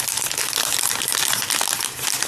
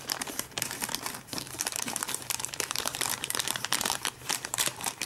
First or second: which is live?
first